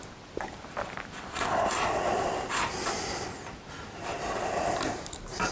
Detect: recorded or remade recorded